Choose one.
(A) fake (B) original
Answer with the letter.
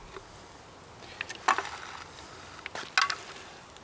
B